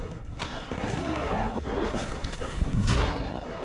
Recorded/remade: remade